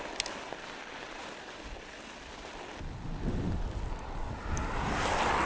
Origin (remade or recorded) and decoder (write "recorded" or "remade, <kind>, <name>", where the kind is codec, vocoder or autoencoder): recorded